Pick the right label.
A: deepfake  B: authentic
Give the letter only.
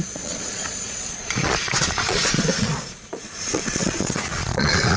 A